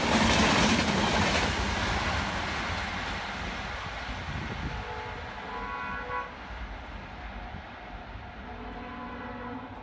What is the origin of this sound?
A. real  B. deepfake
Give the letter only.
A